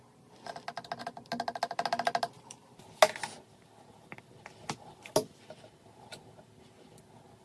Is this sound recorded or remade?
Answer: recorded